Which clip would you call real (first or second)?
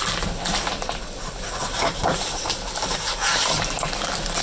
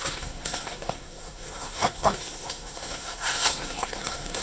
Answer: first